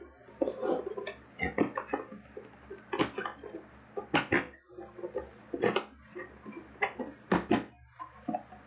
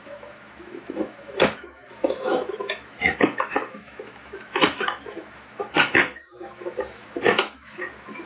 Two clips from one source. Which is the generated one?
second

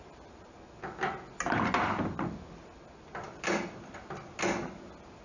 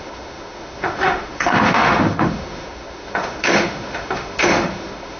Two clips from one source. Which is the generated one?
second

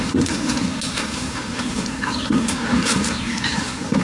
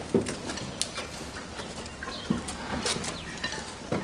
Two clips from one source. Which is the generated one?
first